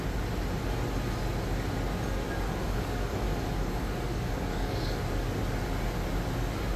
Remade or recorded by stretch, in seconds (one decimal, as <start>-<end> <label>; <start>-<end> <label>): 0.0-2.6 recorded; 2.6-5.0 remade; 5.0-6.8 recorded